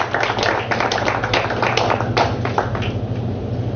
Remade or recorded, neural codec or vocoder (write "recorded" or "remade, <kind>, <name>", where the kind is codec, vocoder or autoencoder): recorded